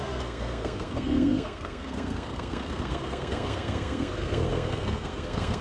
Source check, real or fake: fake